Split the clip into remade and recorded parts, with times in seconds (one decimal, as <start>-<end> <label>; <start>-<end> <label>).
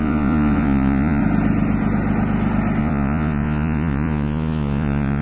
0.0-1.2 remade; 1.2-2.8 recorded; 2.8-5.2 remade